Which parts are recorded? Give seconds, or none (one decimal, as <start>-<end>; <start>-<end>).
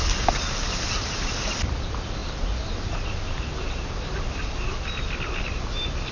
0.0-6.1